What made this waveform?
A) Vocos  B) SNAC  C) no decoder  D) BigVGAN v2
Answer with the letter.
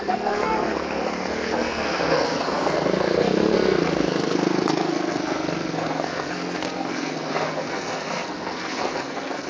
B